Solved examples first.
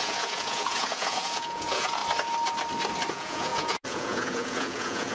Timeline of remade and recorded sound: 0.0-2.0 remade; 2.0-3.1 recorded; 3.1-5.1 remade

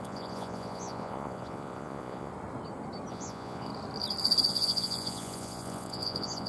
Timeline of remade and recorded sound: 0.0-2.3 remade; 2.3-3.1 recorded; 3.1-3.7 remade; 3.7-4.5 recorded; 4.5-6.5 remade

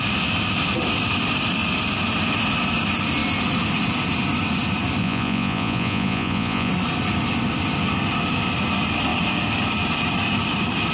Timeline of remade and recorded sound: 0.0-5.0 recorded; 5.0-6.7 remade; 6.7-10.9 recorded

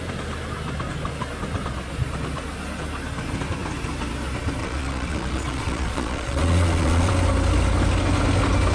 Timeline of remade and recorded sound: 0.0-4.6 recorded; 4.6-7.1 remade; 7.1-8.7 recorded

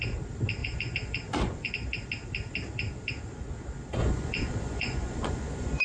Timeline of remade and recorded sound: 0.0-0.6 recorded; 0.6-1.7 remade; 1.7-4.0 recorded; 4.0-5.8 remade

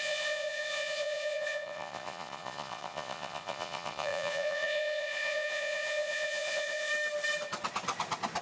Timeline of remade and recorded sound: 0.0-6.9 remade; 6.9-8.4 recorded

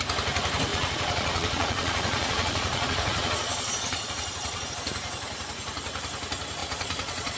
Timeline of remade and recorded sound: 0.0-0.7 recorded; 0.7-4.7 remade; 4.7-6.6 recorded; 6.6-7.4 remade

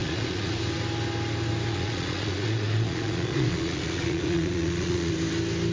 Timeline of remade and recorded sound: 0.0-0.5 remade; 0.5-1.7 recorded; 1.7-5.1 remade; 5.1-5.7 recorded